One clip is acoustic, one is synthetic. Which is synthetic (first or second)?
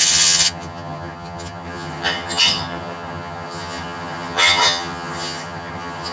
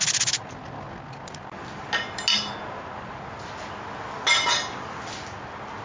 first